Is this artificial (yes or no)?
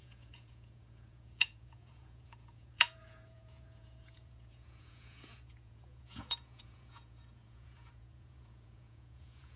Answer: yes